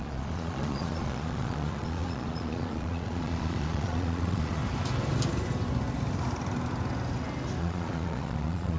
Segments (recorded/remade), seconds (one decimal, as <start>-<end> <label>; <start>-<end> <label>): 0.0-4.6 remade; 4.6-7.6 recorded; 7.6-8.8 remade